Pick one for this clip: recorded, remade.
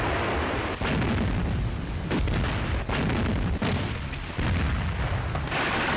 recorded